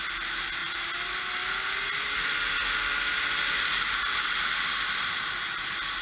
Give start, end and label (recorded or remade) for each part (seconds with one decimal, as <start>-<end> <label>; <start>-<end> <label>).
0.0-6.0 recorded